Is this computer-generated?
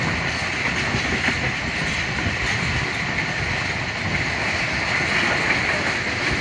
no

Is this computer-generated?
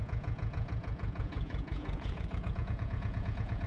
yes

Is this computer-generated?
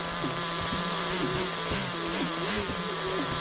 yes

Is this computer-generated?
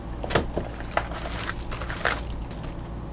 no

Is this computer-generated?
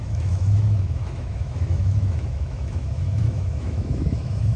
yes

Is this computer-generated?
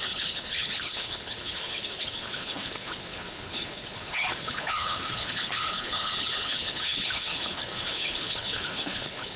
yes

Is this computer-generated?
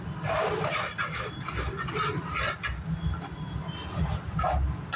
no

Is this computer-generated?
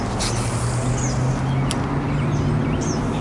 no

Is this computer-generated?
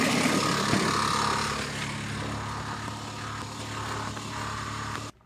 no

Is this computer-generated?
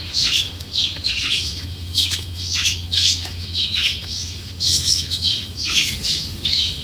yes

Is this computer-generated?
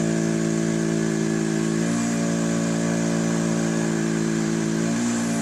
yes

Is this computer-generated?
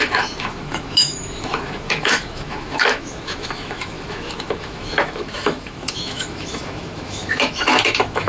yes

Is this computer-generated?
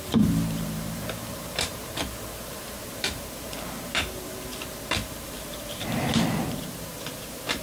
yes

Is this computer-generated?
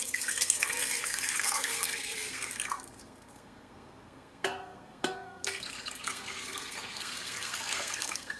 yes